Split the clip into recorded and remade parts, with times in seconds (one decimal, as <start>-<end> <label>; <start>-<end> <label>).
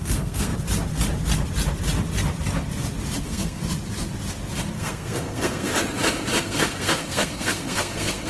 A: 0.0-0.5 remade; 0.5-3.2 recorded; 3.2-3.6 remade; 3.6-4.8 recorded; 4.8-5.7 remade; 5.7-6.4 recorded; 6.4-8.3 remade